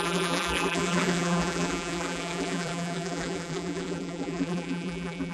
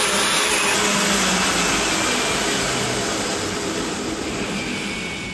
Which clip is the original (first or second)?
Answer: second